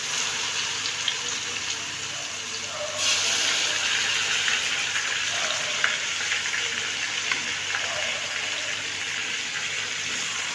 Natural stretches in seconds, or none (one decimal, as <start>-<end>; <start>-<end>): 0.0-10.5